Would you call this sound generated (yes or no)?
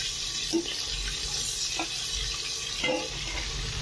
no